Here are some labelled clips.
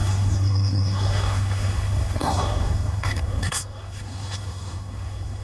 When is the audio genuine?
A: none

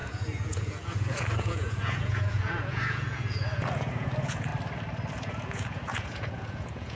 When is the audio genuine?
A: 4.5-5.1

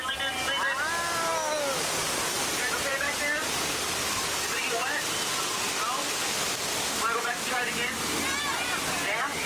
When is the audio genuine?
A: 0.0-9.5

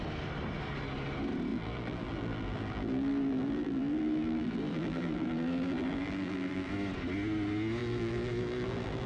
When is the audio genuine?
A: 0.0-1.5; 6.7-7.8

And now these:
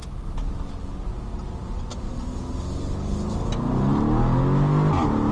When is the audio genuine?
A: 0.0-5.3

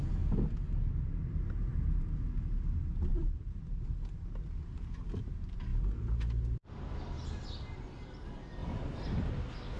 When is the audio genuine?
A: 0.0-9.8

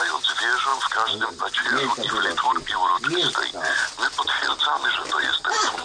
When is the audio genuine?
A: 0.0-5.8

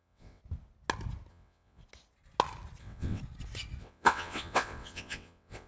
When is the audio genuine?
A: 0.4-1.3; 1.8-2.8; 3.2-3.8